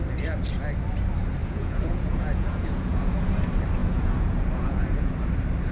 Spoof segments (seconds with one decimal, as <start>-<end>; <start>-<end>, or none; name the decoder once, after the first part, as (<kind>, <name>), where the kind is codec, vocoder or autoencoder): 1.4-3.4 (vocoder, Vocos); 3.8-5.1